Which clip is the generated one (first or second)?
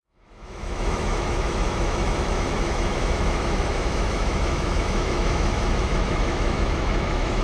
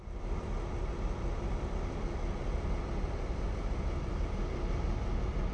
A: first